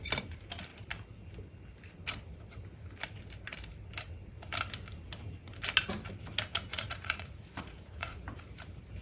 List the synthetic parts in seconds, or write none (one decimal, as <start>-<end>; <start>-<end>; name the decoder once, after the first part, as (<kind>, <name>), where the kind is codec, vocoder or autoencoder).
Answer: 6.7-8.2 (vocoder, Vocos)